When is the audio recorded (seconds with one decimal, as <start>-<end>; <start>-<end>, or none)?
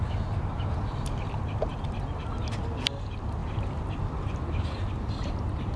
0.0-5.8